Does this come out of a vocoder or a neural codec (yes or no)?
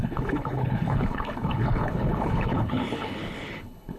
yes